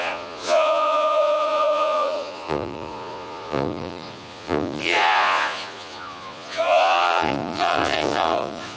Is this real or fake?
fake